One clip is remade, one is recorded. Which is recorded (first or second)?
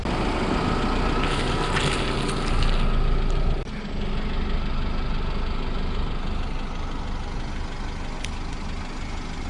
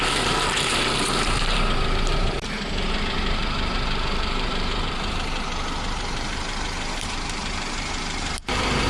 first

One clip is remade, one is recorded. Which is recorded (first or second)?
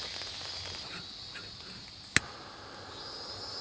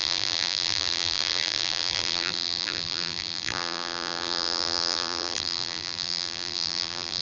first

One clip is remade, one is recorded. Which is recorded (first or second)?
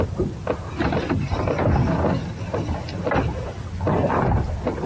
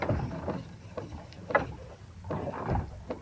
first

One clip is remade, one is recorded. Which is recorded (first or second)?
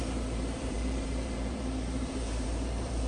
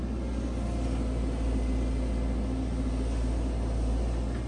second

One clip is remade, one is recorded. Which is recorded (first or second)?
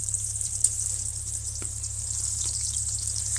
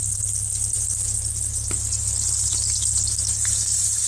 second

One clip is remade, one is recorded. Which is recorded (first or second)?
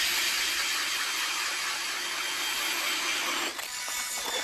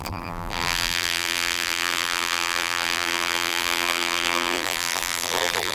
first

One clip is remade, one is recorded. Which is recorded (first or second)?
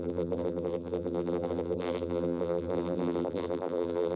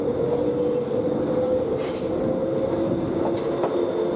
second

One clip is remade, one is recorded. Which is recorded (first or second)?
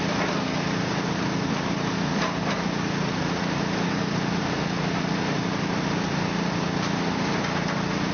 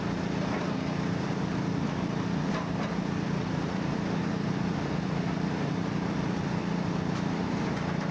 first